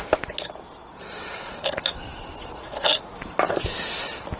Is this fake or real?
real